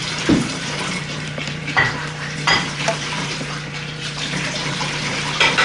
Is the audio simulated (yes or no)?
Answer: yes